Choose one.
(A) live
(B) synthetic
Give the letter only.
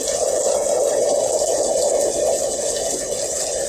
A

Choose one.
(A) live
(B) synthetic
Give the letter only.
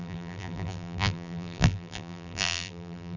B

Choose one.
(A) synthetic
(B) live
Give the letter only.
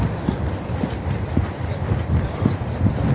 A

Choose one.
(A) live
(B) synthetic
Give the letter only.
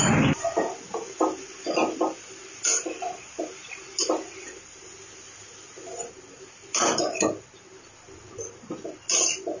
A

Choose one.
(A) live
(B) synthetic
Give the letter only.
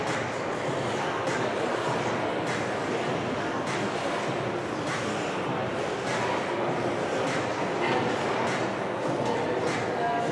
A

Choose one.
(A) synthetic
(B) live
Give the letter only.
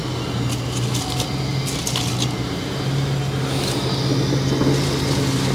B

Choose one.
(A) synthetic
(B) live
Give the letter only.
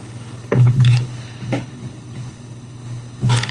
A